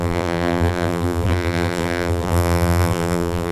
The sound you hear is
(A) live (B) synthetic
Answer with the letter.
B